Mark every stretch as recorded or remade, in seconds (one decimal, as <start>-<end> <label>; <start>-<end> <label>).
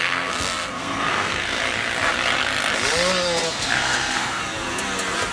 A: 0.0-1.6 remade; 1.6-3.5 recorded; 3.5-4.4 remade; 4.4-5.3 recorded